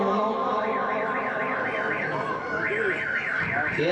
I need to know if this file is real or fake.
real